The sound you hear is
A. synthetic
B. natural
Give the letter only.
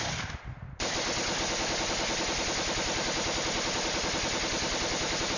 B